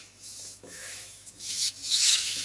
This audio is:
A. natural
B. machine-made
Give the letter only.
B